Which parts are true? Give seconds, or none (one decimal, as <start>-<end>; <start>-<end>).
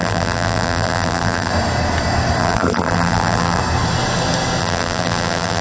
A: 1.5-2.4; 3.6-4.6